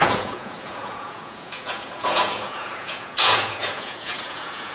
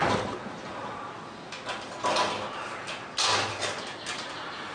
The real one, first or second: second